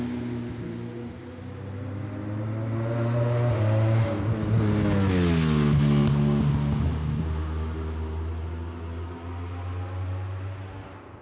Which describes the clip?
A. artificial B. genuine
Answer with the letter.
B